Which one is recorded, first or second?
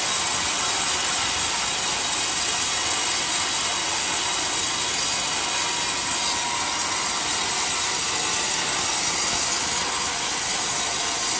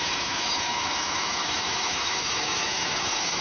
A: first